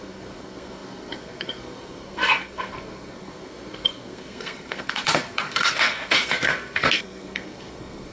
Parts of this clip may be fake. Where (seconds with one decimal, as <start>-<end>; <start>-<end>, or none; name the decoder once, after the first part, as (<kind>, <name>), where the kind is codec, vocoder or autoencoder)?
0.0-8.1 (codec, SNAC)